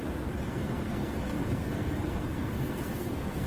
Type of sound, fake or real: fake